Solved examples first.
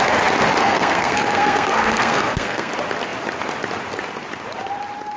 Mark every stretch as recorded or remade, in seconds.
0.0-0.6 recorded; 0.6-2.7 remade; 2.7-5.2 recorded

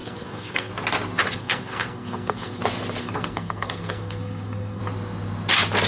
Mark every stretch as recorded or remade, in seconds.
0.0-0.7 remade; 0.7-1.4 recorded; 1.4-2.6 remade; 2.6-3.0 recorded; 3.0-4.8 remade; 4.8-5.9 recorded

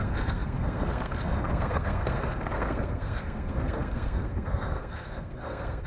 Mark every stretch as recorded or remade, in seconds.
0.0-5.9 remade

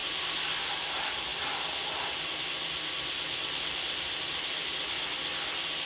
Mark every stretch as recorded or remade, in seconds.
0.0-5.9 recorded

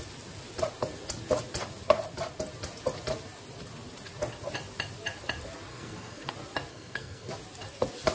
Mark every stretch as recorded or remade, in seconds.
0.0-5.7 recorded; 5.7-6.3 remade; 6.3-6.7 recorded; 6.7-7.3 remade; 7.3-8.1 recorded

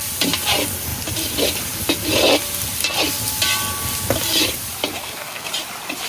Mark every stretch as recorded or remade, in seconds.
0.0-5.0 recorded; 5.0-5.5 remade; 5.5-6.1 recorded